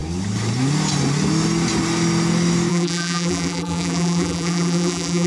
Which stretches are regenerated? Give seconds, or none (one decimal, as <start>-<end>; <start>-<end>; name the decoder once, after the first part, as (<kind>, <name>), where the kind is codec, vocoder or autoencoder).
2.7-5.3 (vocoder, BigVGAN v2)